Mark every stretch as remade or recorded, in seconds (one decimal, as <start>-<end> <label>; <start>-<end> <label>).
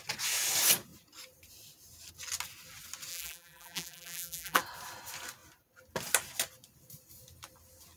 0.0-3.1 recorded; 3.1-4.6 remade; 4.6-8.0 recorded